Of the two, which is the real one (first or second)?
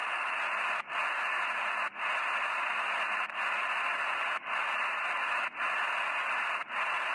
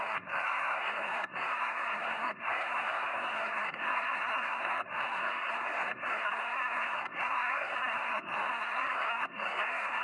first